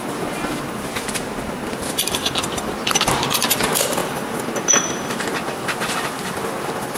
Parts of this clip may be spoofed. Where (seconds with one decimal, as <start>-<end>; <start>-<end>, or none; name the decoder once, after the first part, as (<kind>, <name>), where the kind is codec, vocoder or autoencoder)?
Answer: none